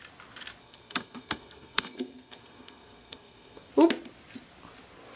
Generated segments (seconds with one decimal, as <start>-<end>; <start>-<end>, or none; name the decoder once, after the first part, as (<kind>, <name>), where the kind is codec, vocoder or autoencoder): 0.6-3.7 (codec, SNAC)